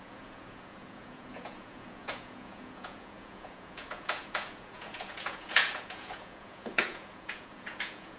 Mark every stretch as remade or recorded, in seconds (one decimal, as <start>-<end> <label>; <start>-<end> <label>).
0.0-8.2 remade